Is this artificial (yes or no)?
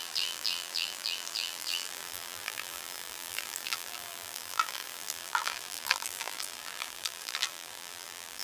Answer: yes